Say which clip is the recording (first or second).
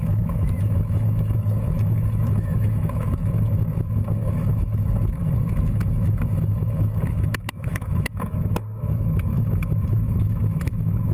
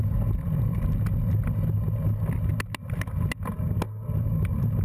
second